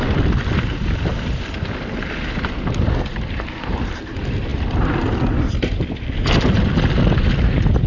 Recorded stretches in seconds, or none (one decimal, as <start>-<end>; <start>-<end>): 0.0-7.9